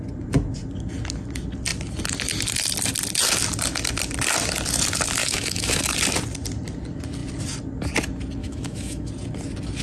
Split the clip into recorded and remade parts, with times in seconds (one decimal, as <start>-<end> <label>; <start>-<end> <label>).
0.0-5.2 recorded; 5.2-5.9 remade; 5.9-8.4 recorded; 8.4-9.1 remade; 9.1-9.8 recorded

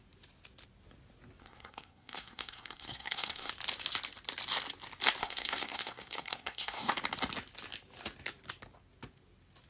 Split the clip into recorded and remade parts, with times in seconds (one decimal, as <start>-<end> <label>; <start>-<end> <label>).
0.0-1.4 recorded; 1.4-3.5 remade; 3.5-5.2 recorded; 5.2-6.9 remade; 6.9-9.7 recorded

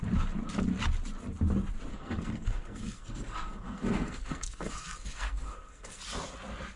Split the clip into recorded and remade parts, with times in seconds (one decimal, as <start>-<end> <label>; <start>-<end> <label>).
0.0-1.9 recorded; 1.9-6.0 remade; 6.0-6.8 recorded

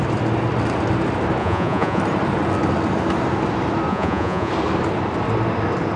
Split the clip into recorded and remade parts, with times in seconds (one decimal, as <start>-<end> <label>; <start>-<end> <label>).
0.0-1.4 recorded; 1.4-2.0 remade; 2.0-3.9 recorded; 3.9-4.5 remade; 4.5-6.0 recorded

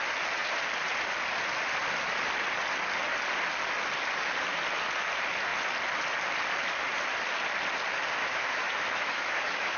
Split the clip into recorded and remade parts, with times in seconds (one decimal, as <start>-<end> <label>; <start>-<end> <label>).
0.0-8.2 recorded; 8.2-9.8 remade

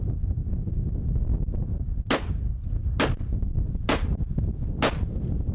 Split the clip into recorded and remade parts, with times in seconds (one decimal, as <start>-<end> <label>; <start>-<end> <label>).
0.0-5.5 recorded

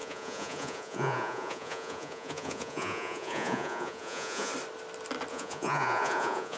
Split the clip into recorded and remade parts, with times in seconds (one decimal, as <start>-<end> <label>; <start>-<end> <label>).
0.0-4.5 remade; 4.5-5.3 recorded; 5.3-6.6 remade

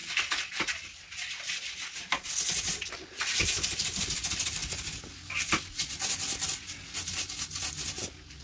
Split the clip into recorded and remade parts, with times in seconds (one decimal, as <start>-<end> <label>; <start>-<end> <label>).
0.0-2.9 recorded; 2.9-4.6 remade; 4.6-7.9 recorded; 7.9-8.4 remade